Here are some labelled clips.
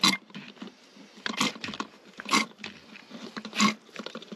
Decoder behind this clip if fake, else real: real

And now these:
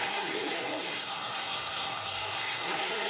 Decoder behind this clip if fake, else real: fake, codec, SNAC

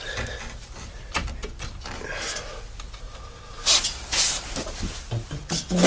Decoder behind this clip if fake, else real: real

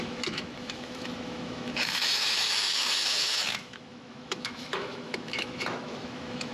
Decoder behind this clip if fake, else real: fake, autoencoder, DAC-VAE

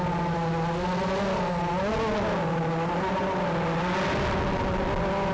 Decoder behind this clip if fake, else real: real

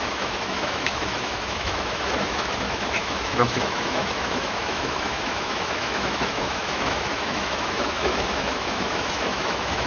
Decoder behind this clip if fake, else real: fake, autoencoder, DAC-VAE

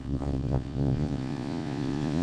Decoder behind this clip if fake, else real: fake, vocoder, Vocos